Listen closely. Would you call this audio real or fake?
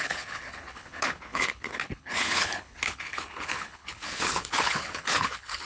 fake